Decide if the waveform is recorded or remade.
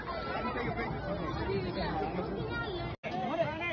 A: recorded